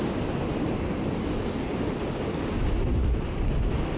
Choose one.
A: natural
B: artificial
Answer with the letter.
A